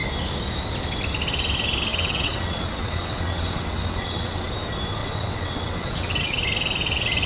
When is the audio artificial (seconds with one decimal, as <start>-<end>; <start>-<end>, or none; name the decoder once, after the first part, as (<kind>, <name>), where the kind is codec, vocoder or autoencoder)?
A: 1.9-4.5 (vocoder, WaveNeXt); 5.0-6.4